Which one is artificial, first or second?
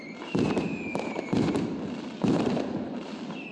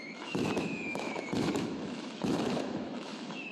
second